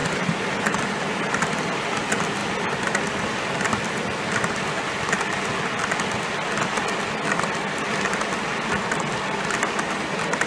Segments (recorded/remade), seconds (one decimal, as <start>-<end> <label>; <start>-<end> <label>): 0.0-0.9 remade; 0.9-10.5 recorded